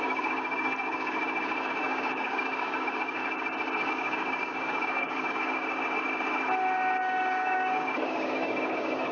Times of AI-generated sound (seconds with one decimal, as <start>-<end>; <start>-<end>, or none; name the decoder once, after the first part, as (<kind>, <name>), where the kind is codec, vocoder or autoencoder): 0.0-1.2 (codec, DAC); 1.7-3.2; 3.9-5.6; 7.0-9.1